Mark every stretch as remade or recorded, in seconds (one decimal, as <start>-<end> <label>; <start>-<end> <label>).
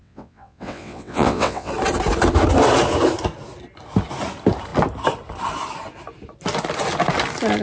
0.0-1.7 remade; 1.7-7.6 recorded